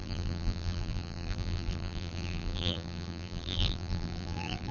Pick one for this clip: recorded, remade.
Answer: remade